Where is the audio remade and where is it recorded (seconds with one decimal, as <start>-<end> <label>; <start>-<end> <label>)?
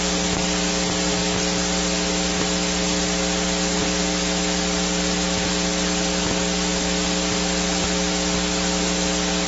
0.0-9.5 recorded